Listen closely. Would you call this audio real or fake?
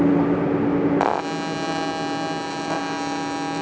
real